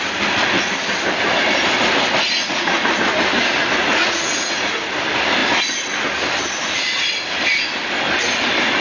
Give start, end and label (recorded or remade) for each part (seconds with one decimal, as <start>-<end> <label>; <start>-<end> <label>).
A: 0.0-2.4 recorded; 2.4-2.9 remade; 2.9-3.8 recorded; 3.8-4.8 remade; 4.8-8.8 recorded